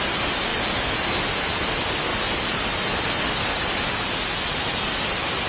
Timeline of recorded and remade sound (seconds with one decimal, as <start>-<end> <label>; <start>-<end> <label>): 0.0-5.5 recorded